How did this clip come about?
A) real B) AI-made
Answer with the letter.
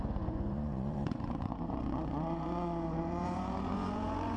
B